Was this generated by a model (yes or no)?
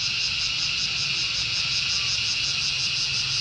no